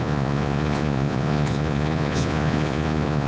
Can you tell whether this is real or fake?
fake